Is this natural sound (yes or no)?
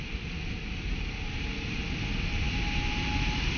yes